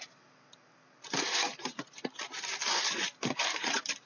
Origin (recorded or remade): recorded